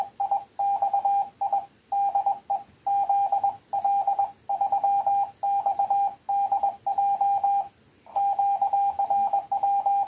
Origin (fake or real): real